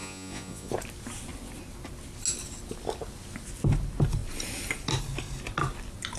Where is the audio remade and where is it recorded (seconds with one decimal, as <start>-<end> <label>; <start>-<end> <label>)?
0.0-0.7 remade; 0.7-6.2 recorded